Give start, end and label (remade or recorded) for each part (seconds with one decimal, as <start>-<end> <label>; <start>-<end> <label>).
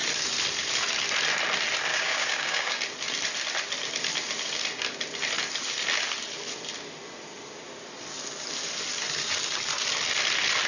0.0-1.9 recorded; 1.9-2.8 remade; 2.8-10.7 recorded